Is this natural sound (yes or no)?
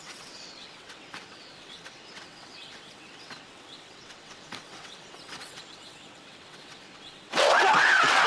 no